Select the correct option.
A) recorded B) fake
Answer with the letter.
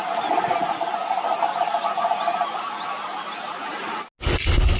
A